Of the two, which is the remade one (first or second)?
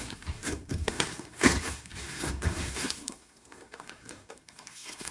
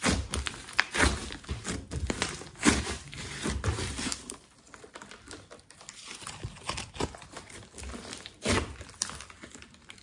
first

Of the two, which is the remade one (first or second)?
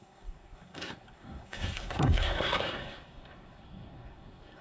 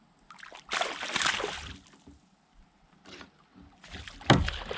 first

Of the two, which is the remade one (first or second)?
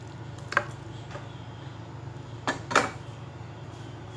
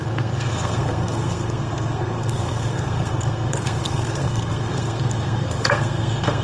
second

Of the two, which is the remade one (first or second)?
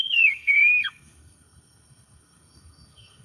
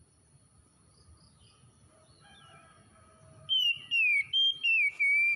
first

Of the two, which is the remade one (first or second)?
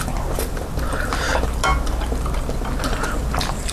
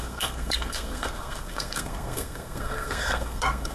second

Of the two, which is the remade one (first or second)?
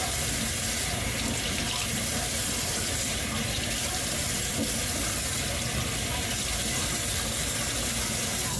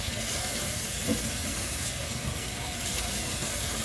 second